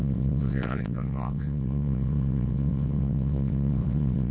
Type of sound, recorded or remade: remade